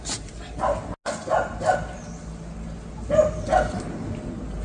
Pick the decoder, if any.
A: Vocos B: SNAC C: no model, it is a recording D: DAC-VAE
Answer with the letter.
C